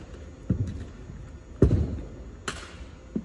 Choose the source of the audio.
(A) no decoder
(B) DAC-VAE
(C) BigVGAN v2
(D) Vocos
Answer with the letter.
A